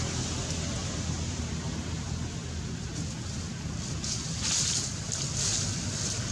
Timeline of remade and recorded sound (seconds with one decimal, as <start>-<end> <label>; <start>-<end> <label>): 0.0-0.8 recorded; 0.8-1.4 remade; 1.4-6.3 recorded